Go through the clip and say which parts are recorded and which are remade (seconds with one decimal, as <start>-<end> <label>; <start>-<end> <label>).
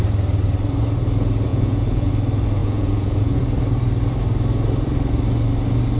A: 0.0-1.5 recorded; 1.5-2.1 remade; 2.1-2.6 recorded; 2.6-3.4 remade; 3.4-6.0 recorded